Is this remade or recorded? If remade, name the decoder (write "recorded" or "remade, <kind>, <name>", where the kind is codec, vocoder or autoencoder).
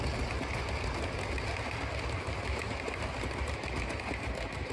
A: recorded